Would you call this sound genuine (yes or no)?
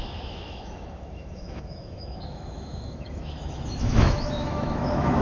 no